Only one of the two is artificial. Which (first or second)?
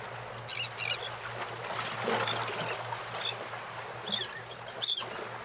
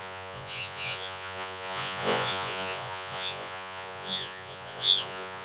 second